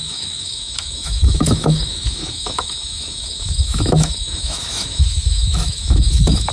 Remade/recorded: remade